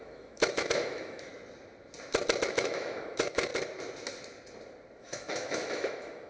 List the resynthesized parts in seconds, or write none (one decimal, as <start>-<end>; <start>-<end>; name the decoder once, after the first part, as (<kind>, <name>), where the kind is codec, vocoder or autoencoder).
0.0-1.3 (autoencoder, DAC-VAE); 2.5-3.5; 5.0-6.3